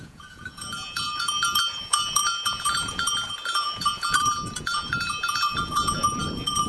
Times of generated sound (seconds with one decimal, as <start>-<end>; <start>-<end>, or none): 0.0-6.7